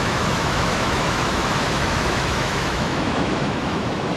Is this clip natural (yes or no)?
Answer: no